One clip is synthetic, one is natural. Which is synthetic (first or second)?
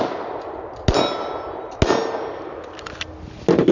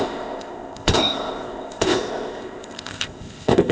second